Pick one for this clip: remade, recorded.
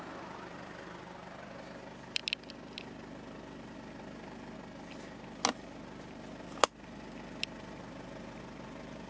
recorded